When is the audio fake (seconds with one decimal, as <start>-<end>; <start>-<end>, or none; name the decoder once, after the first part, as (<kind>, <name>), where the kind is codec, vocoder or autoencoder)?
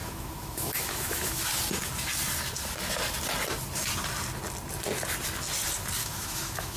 0.0-1.4 (autoencoder, DAC-VAE); 6.0-6.8